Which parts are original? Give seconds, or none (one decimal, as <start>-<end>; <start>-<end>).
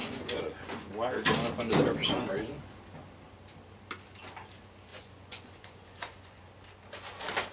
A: 0.9-2.0; 2.6-4.9; 6.4-7.5